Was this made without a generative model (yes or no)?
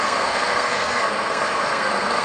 no